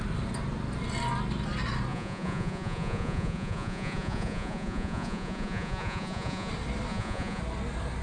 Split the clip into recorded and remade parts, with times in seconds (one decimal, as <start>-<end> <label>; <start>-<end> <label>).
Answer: 0.0-1.9 recorded; 1.9-6.5 remade; 6.5-6.9 recorded; 6.9-7.4 remade; 7.4-8.0 recorded